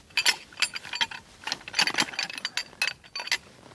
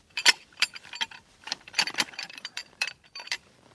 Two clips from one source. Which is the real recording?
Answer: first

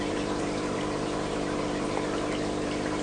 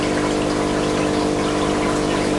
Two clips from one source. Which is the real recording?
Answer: second